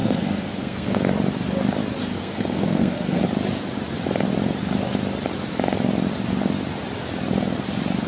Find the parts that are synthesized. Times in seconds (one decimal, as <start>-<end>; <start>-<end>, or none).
0.0-1.0; 2.1-3.2